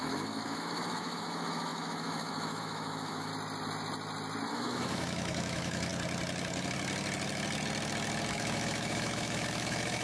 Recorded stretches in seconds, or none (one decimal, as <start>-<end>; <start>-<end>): 3.3-4.5; 5.9-8.3